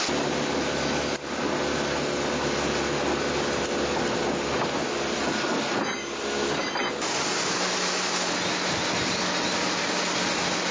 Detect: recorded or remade recorded